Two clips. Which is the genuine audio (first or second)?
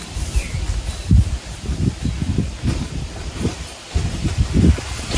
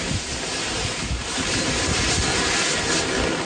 second